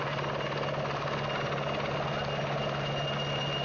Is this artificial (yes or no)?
no